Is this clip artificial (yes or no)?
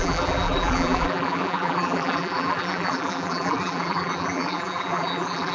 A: yes